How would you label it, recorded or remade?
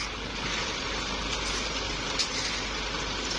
recorded